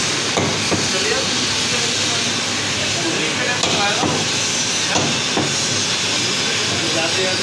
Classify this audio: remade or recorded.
recorded